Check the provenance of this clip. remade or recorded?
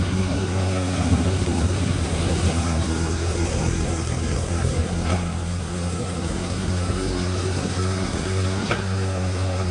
remade